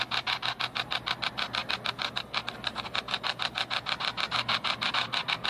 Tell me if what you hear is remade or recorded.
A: recorded